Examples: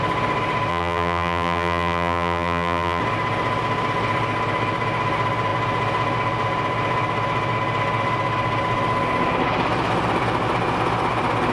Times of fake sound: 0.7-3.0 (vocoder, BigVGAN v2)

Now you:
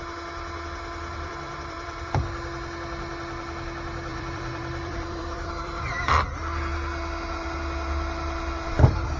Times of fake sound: 1.1-2.1 (vocoder, BigVGAN v2); 4.1-6.1